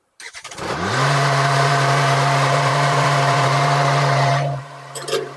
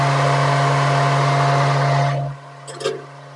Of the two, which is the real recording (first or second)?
second